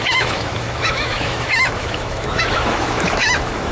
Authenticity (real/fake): fake